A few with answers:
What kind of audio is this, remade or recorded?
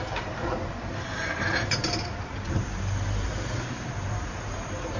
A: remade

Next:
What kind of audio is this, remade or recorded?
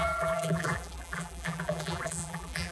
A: remade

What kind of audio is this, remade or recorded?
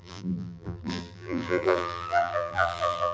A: remade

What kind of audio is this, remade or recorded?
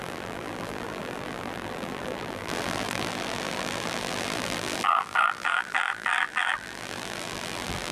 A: remade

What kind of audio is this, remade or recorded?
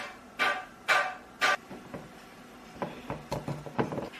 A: remade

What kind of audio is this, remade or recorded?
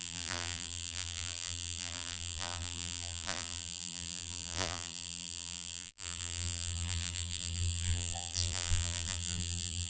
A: remade